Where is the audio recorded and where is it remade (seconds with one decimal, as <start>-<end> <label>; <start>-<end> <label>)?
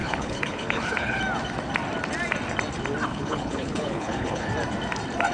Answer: 0.0-1.2 remade; 1.2-3.1 recorded; 3.1-4.5 remade; 4.5-5.3 recorded